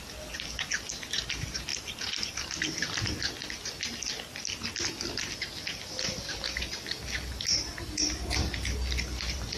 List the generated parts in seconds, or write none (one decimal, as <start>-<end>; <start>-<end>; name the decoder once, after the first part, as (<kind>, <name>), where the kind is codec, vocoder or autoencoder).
none

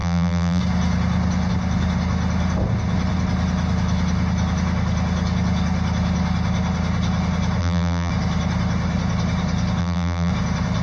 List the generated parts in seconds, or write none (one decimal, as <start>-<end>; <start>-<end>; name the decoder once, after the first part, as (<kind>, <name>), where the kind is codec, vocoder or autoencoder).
0.0-0.6 (vocoder, BigVGAN v2); 7.6-8.1; 9.8-10.3

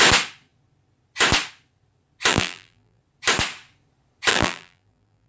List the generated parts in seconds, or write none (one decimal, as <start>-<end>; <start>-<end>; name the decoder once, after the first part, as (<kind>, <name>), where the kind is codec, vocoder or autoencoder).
2.3-3.0 (vocoder, BigVGAN v2); 4.3-5.3

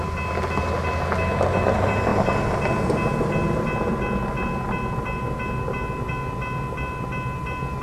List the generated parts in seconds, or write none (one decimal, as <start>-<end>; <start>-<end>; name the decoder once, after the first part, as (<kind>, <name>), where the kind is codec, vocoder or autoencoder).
none